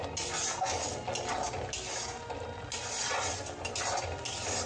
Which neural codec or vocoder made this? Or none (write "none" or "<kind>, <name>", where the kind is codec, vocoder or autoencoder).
none